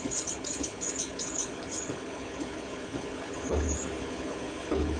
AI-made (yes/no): yes